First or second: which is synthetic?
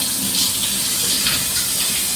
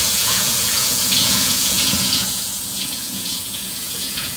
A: second